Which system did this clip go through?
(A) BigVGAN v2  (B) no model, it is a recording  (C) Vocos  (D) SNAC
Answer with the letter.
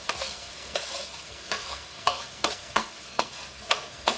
D